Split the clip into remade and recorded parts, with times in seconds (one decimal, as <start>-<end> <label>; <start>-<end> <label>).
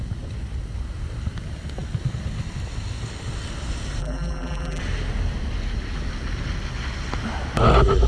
0.0-4.0 recorded; 4.0-4.8 remade; 4.8-8.1 recorded